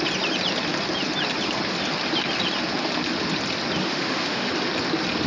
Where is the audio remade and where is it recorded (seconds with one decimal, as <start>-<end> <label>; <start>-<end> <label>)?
0.0-3.8 recorded; 3.8-4.5 remade; 4.5-5.3 recorded